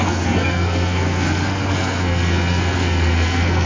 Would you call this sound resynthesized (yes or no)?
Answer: yes